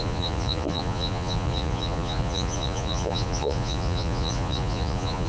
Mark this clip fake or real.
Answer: fake